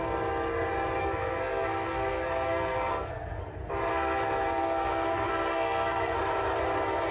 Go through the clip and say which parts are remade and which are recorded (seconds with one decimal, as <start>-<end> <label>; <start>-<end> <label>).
0.0-1.0 recorded; 1.0-3.4 remade; 3.4-3.9 recorded; 3.9-6.2 remade; 6.2-7.1 recorded